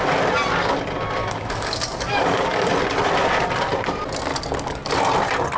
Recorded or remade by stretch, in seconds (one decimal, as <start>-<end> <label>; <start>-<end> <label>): 0.0-1.2 recorded; 1.2-2.7 remade; 2.7-4.3 recorded; 4.3-4.9 remade; 4.9-5.6 recorded